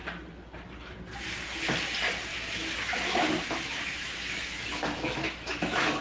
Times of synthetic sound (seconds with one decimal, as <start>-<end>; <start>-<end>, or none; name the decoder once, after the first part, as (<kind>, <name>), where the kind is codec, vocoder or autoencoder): 2.3-6.0 (autoencoder, DAC-VAE)